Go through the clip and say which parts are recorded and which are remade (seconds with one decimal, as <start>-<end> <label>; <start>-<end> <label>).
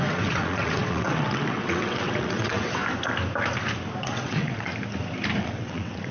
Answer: 0.0-2.8 remade; 2.8-4.0 recorded; 4.0-4.7 remade; 4.7-5.4 recorded; 5.4-6.1 remade